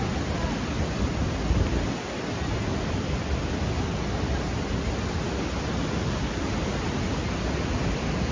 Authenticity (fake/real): real